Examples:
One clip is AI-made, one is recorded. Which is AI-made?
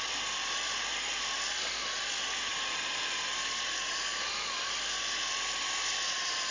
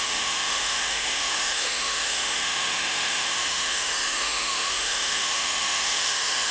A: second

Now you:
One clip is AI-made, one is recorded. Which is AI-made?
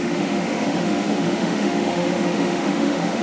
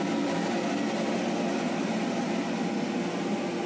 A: first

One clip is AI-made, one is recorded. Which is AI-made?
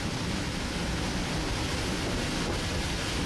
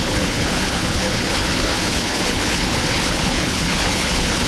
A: second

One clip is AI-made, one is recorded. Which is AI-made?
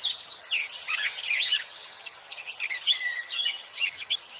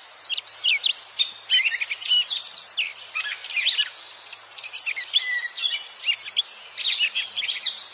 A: first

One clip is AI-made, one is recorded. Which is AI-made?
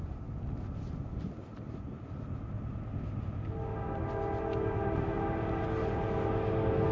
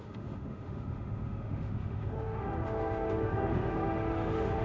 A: second